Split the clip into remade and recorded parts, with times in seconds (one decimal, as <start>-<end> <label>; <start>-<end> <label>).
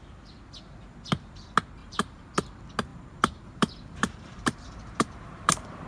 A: 0.0-1.8 recorded; 1.8-2.3 remade; 2.3-2.9 recorded; 2.9-5.9 remade